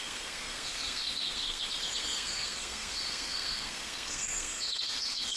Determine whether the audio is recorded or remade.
remade